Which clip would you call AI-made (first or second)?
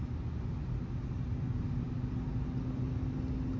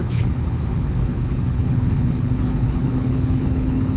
second